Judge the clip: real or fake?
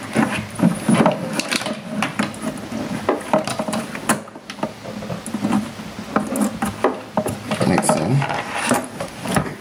real